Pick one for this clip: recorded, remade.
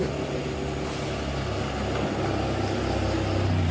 recorded